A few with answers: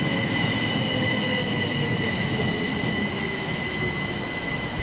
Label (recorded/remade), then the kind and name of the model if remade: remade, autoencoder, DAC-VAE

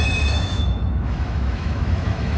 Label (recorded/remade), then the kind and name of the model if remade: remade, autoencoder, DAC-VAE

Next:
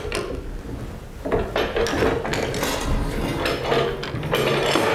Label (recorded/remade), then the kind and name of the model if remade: recorded